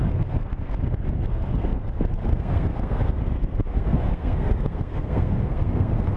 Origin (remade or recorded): remade